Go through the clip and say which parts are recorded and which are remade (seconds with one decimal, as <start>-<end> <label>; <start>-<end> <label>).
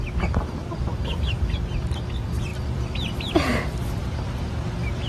0.0-0.6 recorded; 0.6-1.4 remade; 1.4-2.5 recorded; 2.5-4.5 remade; 4.5-5.1 recorded